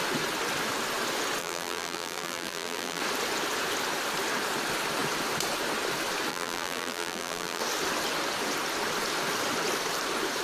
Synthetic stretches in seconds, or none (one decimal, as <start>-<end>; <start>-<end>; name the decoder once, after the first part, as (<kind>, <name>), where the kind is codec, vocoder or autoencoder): 1.4-3.0 (vocoder, BigVGAN v2); 6.3-7.6